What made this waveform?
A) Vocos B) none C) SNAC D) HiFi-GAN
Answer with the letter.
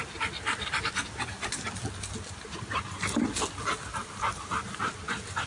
B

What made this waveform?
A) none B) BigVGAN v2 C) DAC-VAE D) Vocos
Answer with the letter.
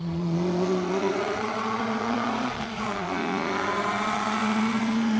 D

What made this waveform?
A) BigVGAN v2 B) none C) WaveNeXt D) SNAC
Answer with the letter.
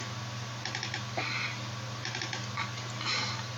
B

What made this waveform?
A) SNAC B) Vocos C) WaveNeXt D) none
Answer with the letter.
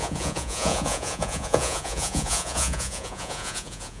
B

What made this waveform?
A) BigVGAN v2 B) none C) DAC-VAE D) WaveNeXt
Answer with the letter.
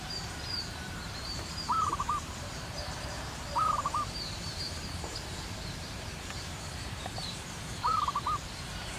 A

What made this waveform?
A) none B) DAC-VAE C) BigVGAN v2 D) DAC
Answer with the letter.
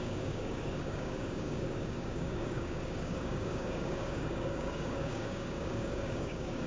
D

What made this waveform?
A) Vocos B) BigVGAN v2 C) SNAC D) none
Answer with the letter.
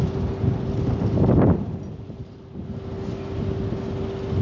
D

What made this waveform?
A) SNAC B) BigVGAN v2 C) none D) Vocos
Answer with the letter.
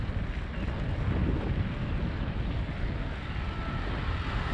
C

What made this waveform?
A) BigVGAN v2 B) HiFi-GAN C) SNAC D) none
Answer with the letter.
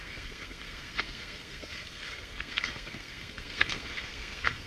C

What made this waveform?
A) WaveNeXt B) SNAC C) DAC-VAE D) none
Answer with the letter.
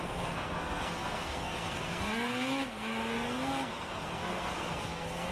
B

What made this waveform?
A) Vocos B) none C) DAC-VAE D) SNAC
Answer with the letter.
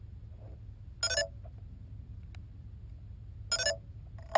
B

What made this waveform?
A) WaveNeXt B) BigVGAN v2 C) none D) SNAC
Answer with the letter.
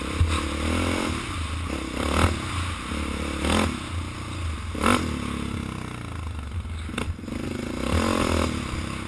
C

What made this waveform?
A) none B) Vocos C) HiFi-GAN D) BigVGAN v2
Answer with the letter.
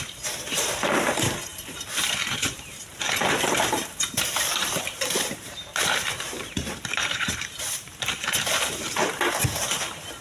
D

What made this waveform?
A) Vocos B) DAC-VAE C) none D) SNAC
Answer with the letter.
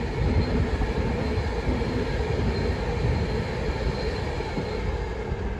C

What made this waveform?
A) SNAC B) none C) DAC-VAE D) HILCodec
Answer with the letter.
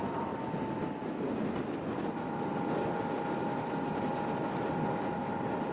B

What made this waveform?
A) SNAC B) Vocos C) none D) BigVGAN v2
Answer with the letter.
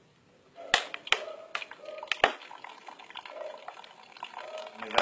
C